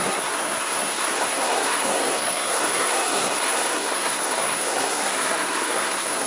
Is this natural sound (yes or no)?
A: no